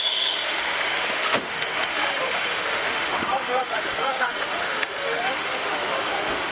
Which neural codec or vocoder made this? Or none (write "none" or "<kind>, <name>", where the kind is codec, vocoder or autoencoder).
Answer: autoencoder, DAC-VAE